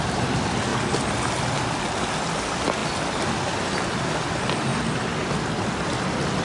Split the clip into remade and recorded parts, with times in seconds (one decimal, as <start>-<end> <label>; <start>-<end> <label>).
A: 0.0-4.7 recorded; 4.7-5.7 remade; 5.7-6.4 recorded